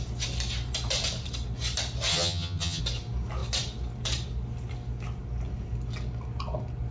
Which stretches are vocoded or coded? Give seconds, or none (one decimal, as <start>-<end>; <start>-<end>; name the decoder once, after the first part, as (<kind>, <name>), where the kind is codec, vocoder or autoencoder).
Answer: 2.1-2.8 (vocoder, HiFi-GAN)